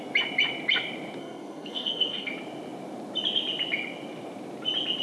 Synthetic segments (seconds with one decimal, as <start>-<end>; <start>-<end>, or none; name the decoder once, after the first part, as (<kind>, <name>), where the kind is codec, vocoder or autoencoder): 1.2-2.3 (codec, SNAC)